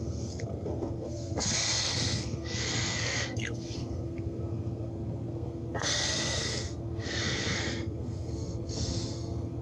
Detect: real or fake fake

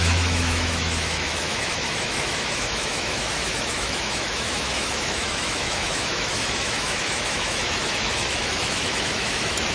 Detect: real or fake fake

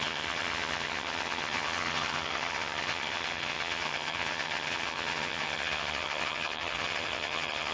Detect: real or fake fake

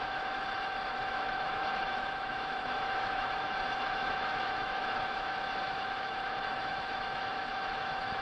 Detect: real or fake fake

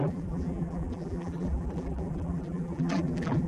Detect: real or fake fake